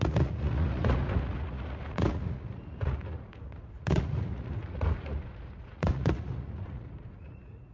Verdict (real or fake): fake